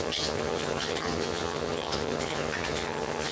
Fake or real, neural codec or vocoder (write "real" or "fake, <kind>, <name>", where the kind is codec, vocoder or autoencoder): fake, vocoder, HiFi-GAN